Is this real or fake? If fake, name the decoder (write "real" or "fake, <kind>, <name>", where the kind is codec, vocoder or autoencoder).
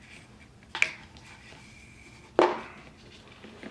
real